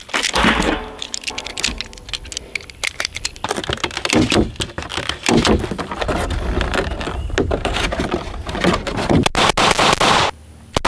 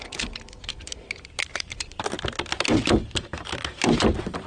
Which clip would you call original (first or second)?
first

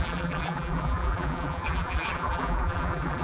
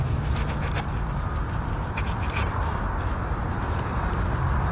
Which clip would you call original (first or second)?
second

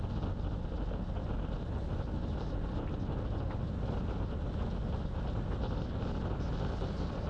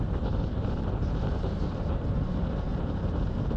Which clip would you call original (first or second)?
first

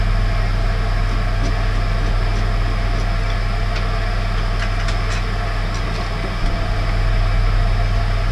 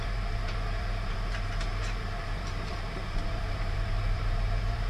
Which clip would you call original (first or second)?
first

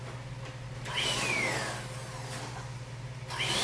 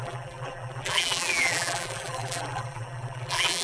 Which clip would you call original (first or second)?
first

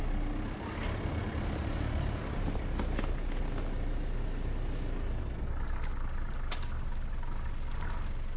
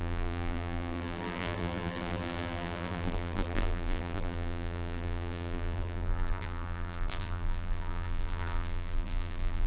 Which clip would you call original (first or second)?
first